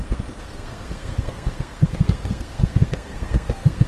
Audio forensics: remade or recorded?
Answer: remade